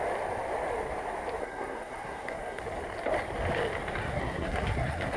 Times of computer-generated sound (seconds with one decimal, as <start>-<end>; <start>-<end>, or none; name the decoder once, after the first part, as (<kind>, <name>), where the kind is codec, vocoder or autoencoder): 1.4-2.6 (codec, SNAC); 4.0-5.2